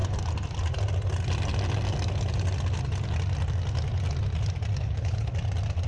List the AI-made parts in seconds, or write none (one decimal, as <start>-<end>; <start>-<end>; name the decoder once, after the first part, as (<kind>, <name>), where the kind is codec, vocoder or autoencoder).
4.8-5.3 (codec, HILCodec)